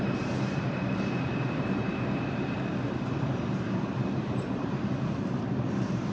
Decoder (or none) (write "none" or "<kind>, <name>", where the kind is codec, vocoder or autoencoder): vocoder, BigVGAN v2